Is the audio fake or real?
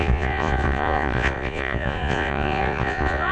fake